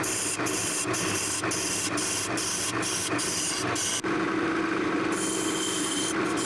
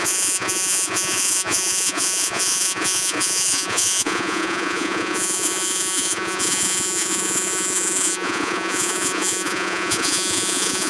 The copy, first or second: second